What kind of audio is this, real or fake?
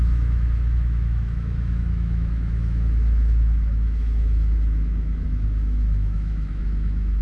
fake